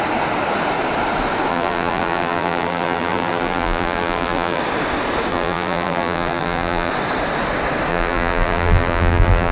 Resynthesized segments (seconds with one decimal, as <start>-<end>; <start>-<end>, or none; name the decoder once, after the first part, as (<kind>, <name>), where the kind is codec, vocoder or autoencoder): 1.5-4.6 (vocoder, BigVGAN v2); 5.3-6.9; 7.9-9.5